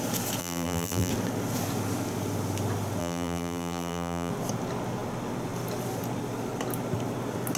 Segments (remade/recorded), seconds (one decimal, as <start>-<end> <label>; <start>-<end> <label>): 0.0-0.4 recorded; 0.4-1.1 remade; 1.1-3.0 recorded; 3.0-4.3 remade; 4.3-7.6 recorded